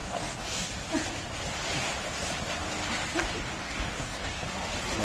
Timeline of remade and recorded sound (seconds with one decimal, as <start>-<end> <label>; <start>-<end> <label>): 0.0-0.7 remade; 0.7-3.6 recorded; 3.6-4.4 remade; 4.4-5.0 recorded